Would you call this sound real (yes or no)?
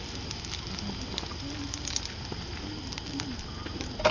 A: yes